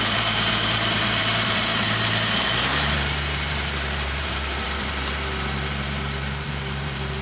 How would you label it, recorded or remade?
remade